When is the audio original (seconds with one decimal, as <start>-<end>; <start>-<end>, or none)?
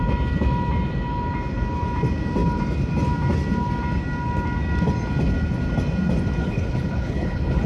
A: 0.0-6.4